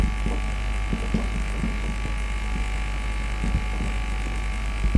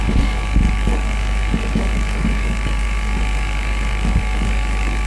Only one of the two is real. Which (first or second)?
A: first